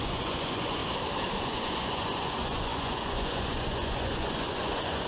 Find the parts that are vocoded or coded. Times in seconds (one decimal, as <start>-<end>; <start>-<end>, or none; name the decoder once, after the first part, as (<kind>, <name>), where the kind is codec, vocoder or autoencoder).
0.0-0.8 (vocoder, Vocos); 1.4-5.1